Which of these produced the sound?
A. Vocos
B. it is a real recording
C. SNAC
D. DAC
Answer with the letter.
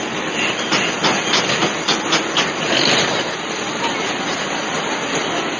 B